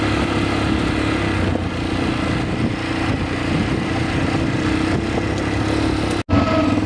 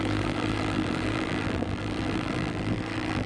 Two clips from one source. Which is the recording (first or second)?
first